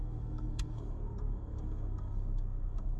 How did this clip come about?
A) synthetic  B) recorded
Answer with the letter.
A